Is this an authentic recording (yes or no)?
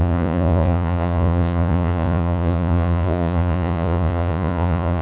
no